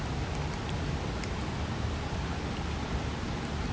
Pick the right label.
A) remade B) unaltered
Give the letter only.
B